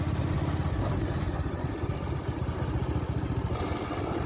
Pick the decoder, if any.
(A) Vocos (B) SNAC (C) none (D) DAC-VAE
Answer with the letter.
C